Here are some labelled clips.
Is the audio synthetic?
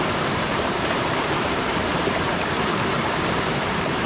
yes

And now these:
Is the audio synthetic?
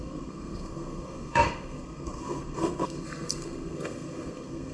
yes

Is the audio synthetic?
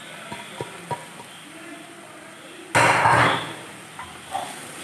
no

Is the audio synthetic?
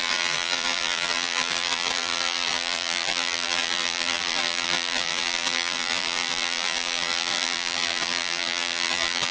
yes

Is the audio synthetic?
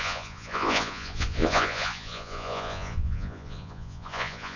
yes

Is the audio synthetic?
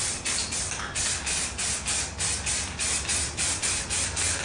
no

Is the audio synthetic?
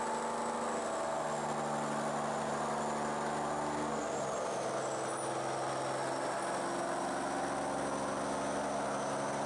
no